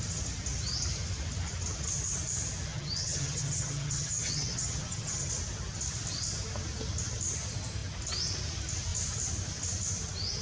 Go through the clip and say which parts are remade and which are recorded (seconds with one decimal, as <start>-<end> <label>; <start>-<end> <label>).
0.0-2.7 recorded; 2.7-5.3 remade; 5.3-10.4 recorded